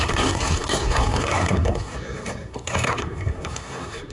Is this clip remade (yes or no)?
yes